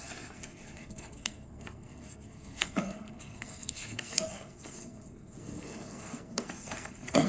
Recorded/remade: remade